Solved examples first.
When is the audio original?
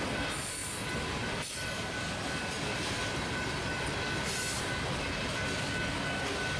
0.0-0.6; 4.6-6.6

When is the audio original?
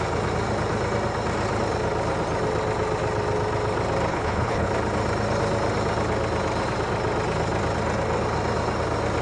0.0-4.1; 4.7-9.2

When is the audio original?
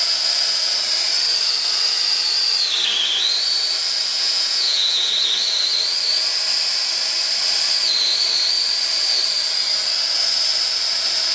0.0-4.1; 5.1-11.3